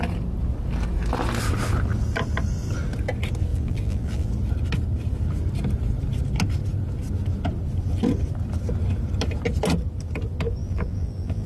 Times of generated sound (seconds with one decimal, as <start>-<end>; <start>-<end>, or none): 3.5-4.3; 10.6-11.5